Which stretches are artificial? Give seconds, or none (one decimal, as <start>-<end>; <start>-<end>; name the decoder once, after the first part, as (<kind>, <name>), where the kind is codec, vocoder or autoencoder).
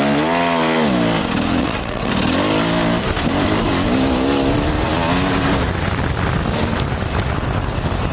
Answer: 1.6-2.1 (vocoder, WaveNeXt)